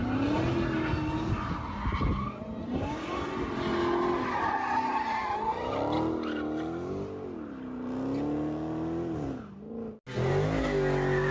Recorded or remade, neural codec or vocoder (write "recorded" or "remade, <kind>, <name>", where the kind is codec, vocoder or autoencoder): recorded